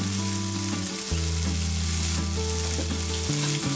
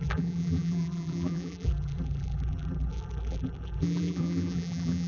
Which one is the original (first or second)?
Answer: first